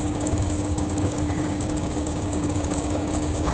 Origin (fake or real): fake